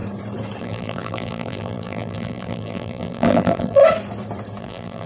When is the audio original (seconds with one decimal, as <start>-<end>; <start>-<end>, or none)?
0.0-0.6; 3.8-4.6